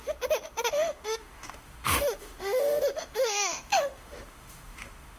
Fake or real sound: fake